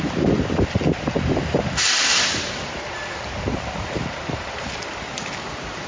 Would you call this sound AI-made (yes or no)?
no